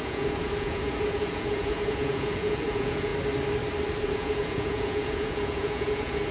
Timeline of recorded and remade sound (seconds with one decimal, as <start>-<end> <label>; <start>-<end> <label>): 0.0-3.1 remade; 3.1-4.0 recorded; 4.0-6.3 remade